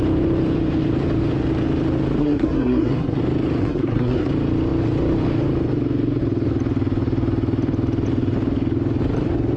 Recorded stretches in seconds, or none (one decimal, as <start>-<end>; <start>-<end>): 0.0-2.2; 3.2-3.6; 4.3-9.6